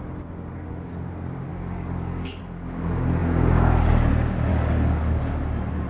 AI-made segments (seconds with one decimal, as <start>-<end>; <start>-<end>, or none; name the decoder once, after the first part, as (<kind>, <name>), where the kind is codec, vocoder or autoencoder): 1.5-2.4 (codec, DAC); 4.5-5.2

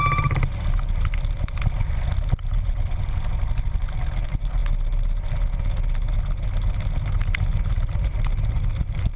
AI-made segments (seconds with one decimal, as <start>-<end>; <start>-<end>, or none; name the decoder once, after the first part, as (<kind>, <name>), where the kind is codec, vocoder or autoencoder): none

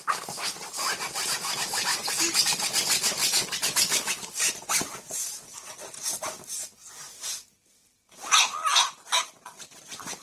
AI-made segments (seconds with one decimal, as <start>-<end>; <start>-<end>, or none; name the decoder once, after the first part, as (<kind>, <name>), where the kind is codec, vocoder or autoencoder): 1.9-2.5 (codec, DAC); 3.2-4.5